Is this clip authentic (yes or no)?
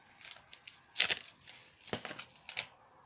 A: yes